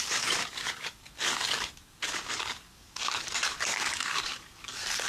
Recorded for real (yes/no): no